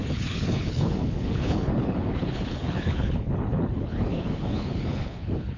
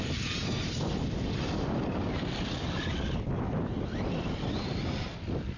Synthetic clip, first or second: first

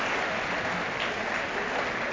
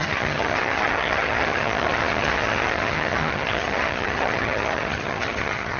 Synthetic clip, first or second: second